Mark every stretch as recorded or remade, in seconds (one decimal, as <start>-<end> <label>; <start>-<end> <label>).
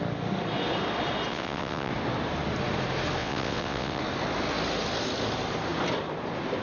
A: 0.0-1.3 recorded; 1.3-1.9 remade; 1.9-3.2 recorded; 3.2-4.0 remade; 4.0-6.6 recorded